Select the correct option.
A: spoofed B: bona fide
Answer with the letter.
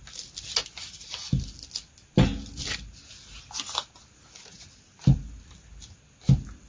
B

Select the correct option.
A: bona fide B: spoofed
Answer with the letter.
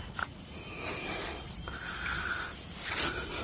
A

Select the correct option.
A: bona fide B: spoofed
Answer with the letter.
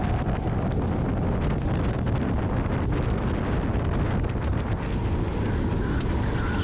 A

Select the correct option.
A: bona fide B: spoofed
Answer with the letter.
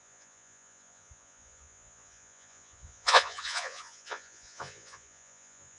B